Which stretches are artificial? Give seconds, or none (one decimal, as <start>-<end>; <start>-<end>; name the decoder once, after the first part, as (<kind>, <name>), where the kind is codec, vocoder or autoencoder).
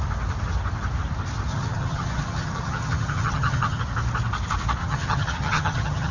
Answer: 1.5-3.8 (vocoder, HiFi-GAN); 4.8-6.1